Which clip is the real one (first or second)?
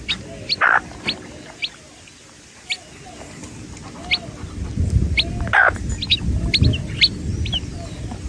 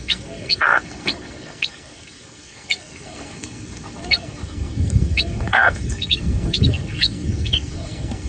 first